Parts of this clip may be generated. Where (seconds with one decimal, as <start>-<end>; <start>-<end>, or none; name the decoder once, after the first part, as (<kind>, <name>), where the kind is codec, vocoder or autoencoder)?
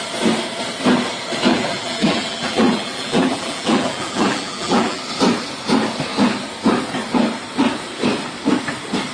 1.5-5.0 (vocoder, BigVGAN v2)